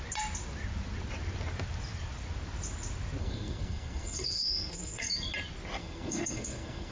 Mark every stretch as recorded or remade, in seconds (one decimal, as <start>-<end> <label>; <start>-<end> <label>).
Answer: 0.0-3.2 recorded; 3.2-5.3 remade; 5.3-5.8 recorded; 5.8-6.9 remade